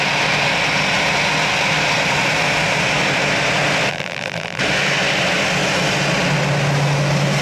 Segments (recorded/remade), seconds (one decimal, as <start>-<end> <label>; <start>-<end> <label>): 0.0-3.9 recorded; 3.9-4.6 remade; 4.6-7.4 recorded